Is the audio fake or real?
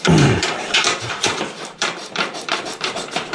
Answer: fake